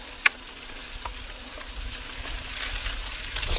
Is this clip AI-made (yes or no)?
no